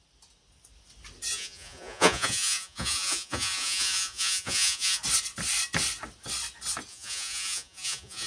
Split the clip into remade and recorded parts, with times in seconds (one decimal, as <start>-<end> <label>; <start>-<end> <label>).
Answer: 0.0-1.3 recorded; 1.3-5.0 remade; 5.0-6.9 recorded; 6.9-8.3 remade